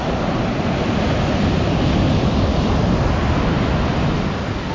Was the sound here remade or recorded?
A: recorded